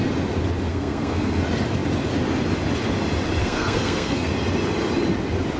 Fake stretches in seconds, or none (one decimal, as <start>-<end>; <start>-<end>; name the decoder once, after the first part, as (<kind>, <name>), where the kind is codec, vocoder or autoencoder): 0.7-1.4 (codec, SNAC); 3.4-4.3